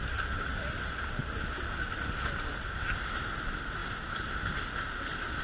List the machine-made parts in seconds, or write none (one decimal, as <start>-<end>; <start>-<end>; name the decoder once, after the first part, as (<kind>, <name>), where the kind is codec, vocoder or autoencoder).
none